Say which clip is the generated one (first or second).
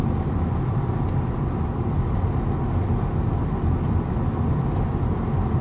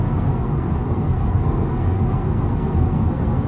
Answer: second